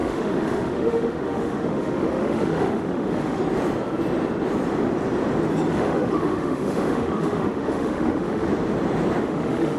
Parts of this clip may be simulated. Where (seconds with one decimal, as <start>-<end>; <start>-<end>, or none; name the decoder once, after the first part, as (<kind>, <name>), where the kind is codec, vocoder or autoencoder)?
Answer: 0.0-3.4 (autoencoder, DAC-VAE); 5.7-8.5; 9.2-9.8